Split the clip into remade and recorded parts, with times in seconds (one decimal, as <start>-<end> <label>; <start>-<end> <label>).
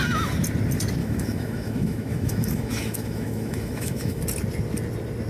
0.0-1.0 recorded; 1.0-4.2 remade; 4.2-5.3 recorded